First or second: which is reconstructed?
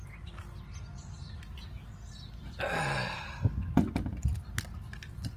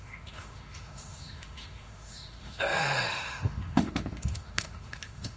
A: second